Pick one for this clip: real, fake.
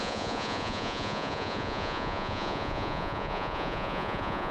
fake